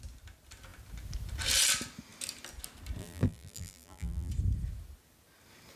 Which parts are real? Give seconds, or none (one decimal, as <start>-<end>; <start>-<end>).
0.0-3.0; 4.3-5.8